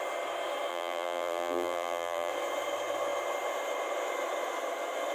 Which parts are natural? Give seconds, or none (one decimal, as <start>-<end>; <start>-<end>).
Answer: 0.0-0.7; 2.3-5.1